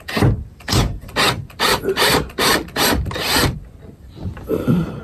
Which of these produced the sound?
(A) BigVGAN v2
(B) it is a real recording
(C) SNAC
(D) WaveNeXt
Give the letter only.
A